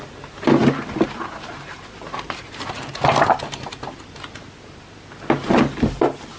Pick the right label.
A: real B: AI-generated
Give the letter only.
A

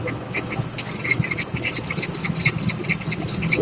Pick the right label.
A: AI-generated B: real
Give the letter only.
B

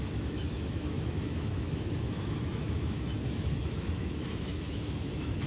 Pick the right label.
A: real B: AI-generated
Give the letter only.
B